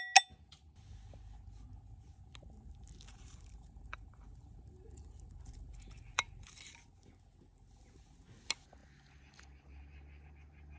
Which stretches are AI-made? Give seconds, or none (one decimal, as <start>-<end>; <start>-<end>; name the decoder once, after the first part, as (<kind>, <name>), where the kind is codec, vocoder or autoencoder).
3.1-6.3 (vocoder, BigVGAN v2)